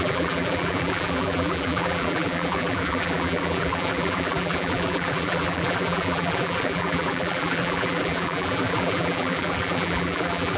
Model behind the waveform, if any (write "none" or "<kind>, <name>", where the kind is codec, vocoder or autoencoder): vocoder, BigVGAN v2